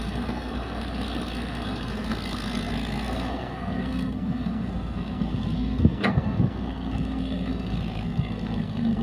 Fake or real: fake